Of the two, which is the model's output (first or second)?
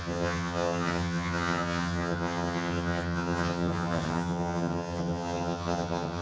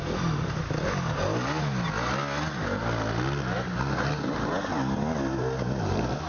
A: first